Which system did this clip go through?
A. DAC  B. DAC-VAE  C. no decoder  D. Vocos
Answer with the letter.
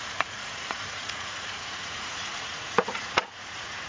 D